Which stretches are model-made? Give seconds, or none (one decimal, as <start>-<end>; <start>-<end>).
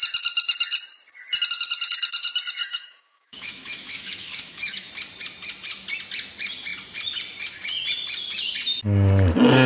2.6-4.9